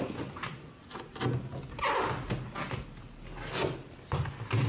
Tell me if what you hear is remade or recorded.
recorded